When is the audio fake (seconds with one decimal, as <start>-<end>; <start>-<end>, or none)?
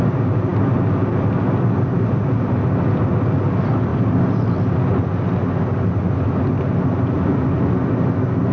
none